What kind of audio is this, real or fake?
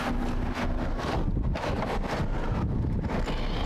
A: real